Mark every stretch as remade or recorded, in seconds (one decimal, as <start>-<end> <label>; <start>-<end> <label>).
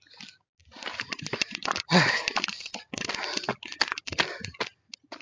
0.0-0.6 recorded; 0.6-1.9 remade; 1.9-5.2 recorded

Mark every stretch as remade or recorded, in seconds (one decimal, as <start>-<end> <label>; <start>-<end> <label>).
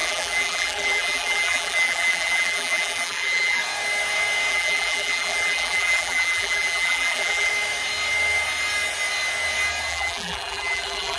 0.0-3.6 remade; 3.6-4.5 recorded; 4.5-7.5 remade; 7.5-9.9 recorded; 9.9-11.2 remade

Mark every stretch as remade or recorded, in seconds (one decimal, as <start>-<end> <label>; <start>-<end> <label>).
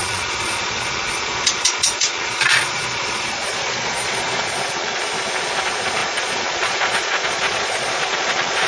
0.0-5.0 remade; 5.0-6.0 recorded; 6.0-8.7 remade